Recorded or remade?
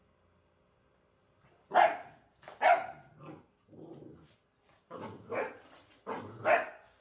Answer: recorded